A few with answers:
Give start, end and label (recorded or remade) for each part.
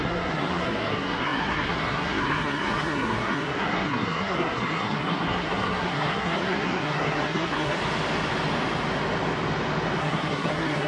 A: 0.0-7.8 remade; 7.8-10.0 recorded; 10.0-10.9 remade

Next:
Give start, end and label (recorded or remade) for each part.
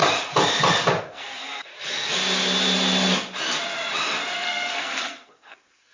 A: 0.0-1.0 recorded; 1.0-1.7 remade; 1.7-4.3 recorded; 4.3-5.9 remade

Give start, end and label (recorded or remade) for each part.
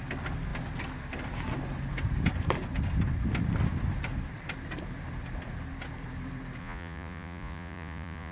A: 0.0-6.6 recorded; 6.6-8.3 remade